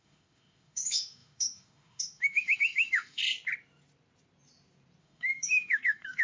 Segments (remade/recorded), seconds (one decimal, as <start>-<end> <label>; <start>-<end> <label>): 0.0-3.2 remade; 3.2-5.0 recorded; 5.0-6.2 remade